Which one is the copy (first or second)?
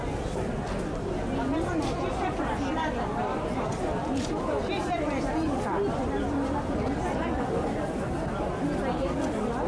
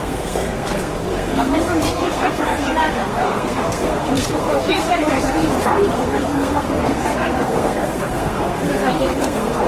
second